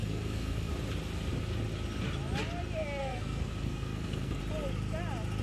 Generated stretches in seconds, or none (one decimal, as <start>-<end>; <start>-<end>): 0.0-0.7; 3.0-4.4